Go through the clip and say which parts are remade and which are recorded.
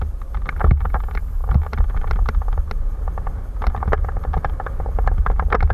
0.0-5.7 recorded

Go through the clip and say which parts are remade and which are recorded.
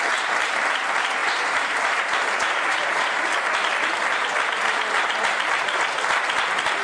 0.0-1.2 recorded; 1.2-3.2 remade; 3.2-6.8 recorded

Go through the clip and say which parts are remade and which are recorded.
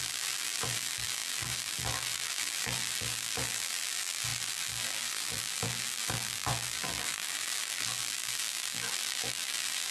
0.0-9.9 remade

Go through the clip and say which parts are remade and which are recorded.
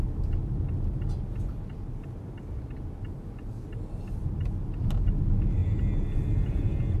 0.0-7.0 recorded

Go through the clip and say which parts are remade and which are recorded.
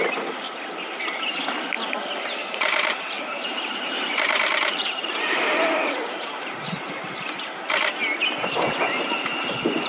0.0-2.4 recorded; 2.4-7.6 remade; 7.6-9.9 recorded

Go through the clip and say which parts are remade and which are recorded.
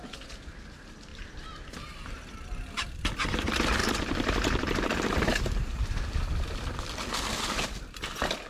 0.0-1.1 recorded; 1.1-3.0 remade; 3.0-3.8 recorded; 3.8-6.8 remade; 6.8-8.5 recorded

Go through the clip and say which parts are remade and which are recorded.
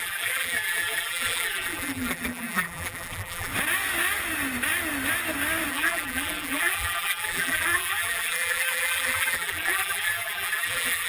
0.0-3.5 remade; 3.5-5.7 recorded; 5.7-11.1 remade